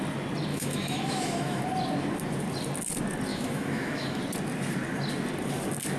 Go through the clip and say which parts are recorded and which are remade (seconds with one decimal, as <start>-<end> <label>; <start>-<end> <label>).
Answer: 0.0-0.5 recorded; 0.5-1.6 remade; 1.6-3.3 recorded; 3.3-4.2 remade; 4.2-6.0 recorded